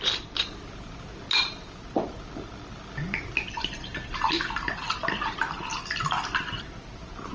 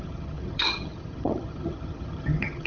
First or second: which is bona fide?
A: first